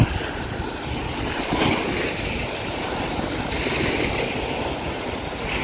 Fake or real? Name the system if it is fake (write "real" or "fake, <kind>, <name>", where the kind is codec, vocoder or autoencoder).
real